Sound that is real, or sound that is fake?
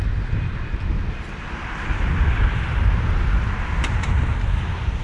real